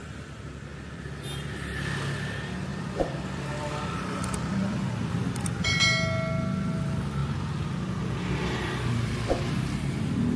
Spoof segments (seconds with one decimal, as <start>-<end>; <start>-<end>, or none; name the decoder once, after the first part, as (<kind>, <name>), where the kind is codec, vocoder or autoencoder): 2.7-5.8 (vocoder, BigVGAN v2); 7.2-7.7